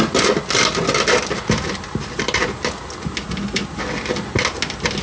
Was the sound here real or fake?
real